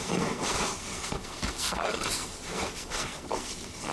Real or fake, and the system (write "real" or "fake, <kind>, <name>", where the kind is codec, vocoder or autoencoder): fake, codec, SNAC